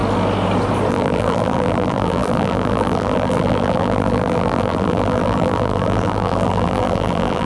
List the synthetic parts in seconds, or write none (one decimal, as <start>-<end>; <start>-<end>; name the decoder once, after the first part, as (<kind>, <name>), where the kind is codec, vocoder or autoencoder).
0.9-7.4 (vocoder, BigVGAN v2)